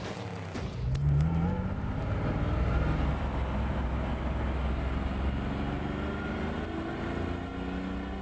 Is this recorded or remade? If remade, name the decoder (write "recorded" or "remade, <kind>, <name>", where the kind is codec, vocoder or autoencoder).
recorded